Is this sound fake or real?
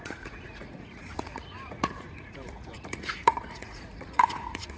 fake